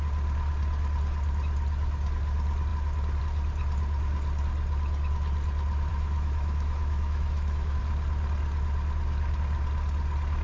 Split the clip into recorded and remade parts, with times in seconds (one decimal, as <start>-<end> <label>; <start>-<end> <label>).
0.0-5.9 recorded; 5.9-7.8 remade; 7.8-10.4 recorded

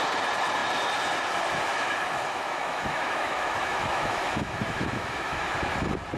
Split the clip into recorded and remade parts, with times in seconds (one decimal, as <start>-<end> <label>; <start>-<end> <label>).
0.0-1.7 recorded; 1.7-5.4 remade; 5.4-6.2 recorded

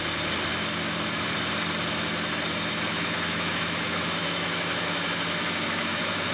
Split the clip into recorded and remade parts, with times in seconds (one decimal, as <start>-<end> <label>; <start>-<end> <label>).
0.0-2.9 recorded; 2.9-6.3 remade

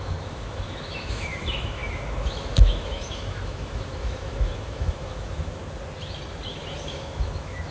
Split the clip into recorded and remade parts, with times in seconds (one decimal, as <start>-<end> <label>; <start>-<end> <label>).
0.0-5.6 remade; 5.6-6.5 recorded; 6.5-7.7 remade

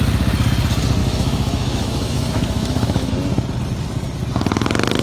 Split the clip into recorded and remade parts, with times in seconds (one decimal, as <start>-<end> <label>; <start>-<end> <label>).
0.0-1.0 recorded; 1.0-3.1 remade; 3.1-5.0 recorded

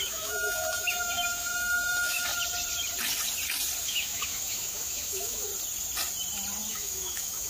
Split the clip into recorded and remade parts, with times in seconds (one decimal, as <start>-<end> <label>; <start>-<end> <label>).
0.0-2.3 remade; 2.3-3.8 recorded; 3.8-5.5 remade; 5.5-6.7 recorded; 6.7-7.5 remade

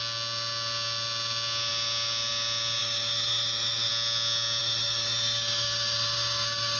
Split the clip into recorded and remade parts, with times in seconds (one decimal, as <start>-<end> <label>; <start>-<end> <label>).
0.0-2.8 recorded; 2.8-3.9 remade; 3.9-4.6 recorded; 4.6-6.8 remade